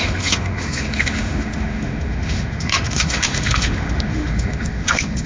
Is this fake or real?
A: fake